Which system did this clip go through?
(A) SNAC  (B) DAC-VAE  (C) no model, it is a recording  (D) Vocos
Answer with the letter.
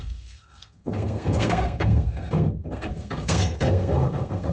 A